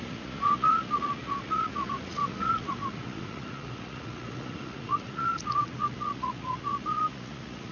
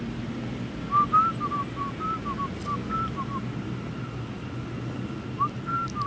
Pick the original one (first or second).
second